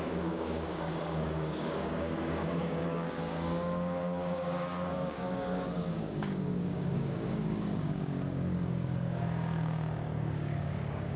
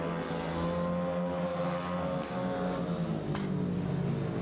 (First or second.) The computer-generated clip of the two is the first